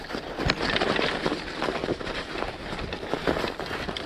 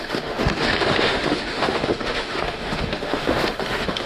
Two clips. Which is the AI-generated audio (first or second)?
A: second